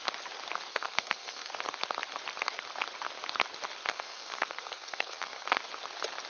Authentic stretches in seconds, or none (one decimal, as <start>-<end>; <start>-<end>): 0.0-0.7; 1.5-3.9; 5.6-6.3